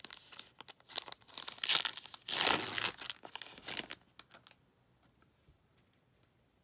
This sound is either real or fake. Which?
real